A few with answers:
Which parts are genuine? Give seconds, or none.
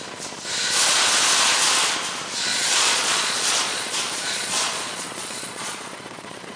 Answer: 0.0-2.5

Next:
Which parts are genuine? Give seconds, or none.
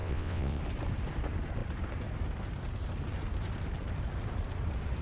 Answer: 0.6-5.0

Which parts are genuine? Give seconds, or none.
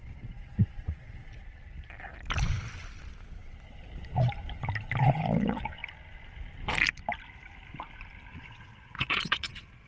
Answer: 1.2-5.0; 5.8-8.3